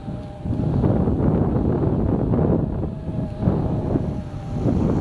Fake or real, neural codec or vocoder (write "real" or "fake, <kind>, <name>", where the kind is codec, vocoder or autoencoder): real